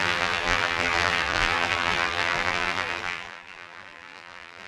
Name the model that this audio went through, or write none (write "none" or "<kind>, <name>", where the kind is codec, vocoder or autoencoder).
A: vocoder, BigVGAN v2